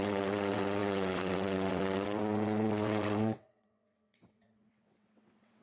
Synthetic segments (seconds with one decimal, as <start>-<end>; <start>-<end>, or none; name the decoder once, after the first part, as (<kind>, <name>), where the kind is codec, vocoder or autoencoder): 0.0-5.6 (vocoder, WaveNeXt)